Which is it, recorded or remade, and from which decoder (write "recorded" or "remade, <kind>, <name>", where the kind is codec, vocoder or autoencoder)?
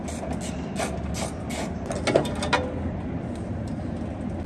recorded